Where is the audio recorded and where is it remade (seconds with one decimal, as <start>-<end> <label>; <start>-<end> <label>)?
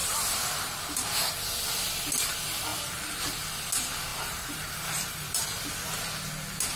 0.0-1.3 remade; 1.3-2.7 recorded; 2.7-3.2 remade; 3.2-4.1 recorded; 4.1-5.4 remade; 5.4-6.8 recorded